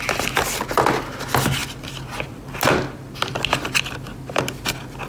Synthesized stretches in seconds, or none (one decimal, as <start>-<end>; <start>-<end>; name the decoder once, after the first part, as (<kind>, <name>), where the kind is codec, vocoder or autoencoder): none